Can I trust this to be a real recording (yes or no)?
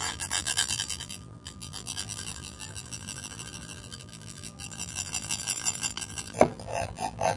no